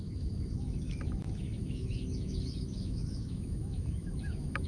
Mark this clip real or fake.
fake